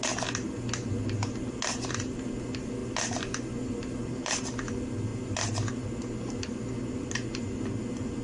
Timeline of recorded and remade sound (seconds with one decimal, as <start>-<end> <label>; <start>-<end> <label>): 0.0-8.2 recorded